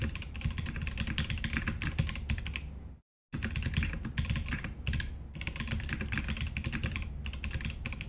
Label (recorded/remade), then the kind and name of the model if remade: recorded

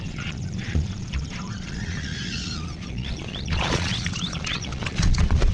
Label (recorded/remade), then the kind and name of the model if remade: remade, vocoder, Vocos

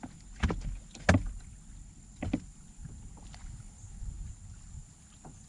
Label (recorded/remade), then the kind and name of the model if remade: recorded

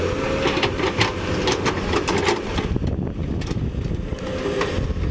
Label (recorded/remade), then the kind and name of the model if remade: recorded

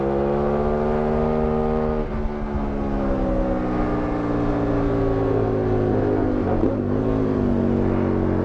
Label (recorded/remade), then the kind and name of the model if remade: recorded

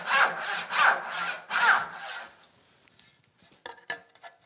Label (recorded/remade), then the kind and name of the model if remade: recorded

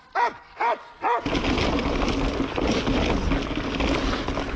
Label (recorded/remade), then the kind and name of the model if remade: recorded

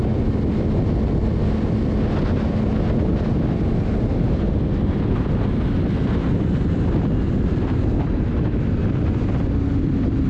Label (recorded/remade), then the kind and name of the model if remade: recorded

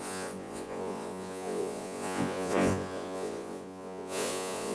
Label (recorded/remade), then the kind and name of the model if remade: remade, vocoder, Vocos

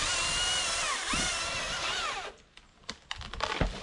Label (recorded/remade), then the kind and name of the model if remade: recorded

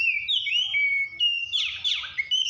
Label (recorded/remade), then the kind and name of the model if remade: recorded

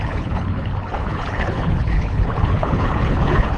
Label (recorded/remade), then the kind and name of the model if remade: remade, codec, HILCodec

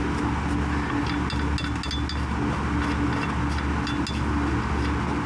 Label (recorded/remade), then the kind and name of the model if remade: recorded